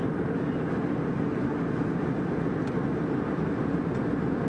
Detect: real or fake real